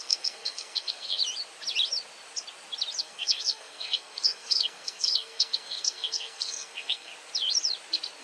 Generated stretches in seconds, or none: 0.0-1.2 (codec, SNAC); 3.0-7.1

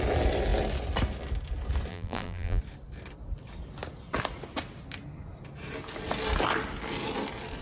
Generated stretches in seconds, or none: 1.9-2.6 (vocoder, BigVGAN v2)

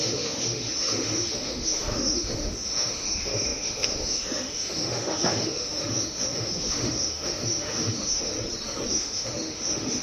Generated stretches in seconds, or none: 0.0-8.3 (autoencoder, DAC-VAE); 8.9-10.0